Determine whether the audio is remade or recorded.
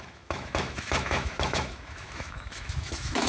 remade